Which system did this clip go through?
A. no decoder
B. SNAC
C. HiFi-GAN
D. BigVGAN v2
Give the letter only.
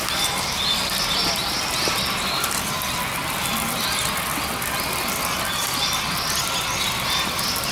A